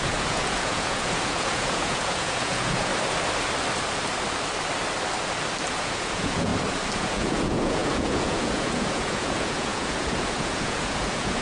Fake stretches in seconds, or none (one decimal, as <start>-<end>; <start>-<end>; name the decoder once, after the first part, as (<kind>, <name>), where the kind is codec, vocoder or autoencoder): 0.0-2.9 (vocoder, Vocos); 5.8-6.5; 7.0-11.4

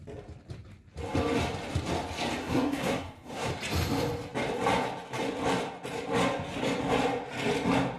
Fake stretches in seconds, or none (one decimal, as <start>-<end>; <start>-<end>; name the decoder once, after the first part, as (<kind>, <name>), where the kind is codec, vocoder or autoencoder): 2.4-3.5 (codec, SNAC)

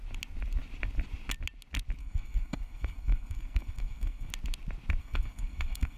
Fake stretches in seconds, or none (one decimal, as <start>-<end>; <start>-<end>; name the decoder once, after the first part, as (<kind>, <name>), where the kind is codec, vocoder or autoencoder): 2.0-4.3 (codec, SNAC); 5.0-6.0

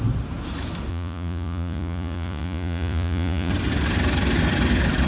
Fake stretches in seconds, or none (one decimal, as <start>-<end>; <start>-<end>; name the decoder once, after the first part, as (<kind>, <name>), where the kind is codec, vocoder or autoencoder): 0.9-3.5 (vocoder, Vocos)

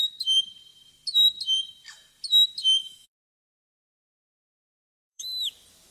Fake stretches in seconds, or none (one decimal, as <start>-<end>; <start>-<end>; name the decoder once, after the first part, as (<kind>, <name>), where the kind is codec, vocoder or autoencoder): 2.8-5.5 (autoencoder, DAC-VAE)

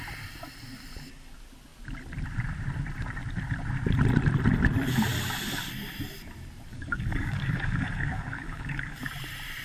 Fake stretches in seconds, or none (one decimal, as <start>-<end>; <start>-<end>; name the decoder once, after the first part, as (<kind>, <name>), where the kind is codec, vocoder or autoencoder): 6.7-9.0 (codec, DAC)

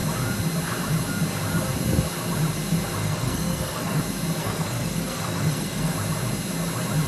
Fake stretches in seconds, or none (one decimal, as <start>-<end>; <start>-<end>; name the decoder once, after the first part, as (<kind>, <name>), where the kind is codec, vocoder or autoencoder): 3.0-4.0 (codec, SNAC); 4.4-5.9

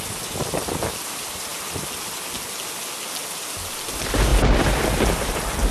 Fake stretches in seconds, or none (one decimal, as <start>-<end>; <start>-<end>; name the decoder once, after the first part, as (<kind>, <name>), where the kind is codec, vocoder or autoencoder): 0.0-1.5 (vocoder, BigVGAN v2); 3.2-4.3; 5.1-5.7